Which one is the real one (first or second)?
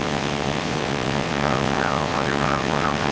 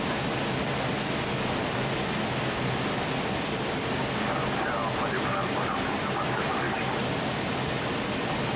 second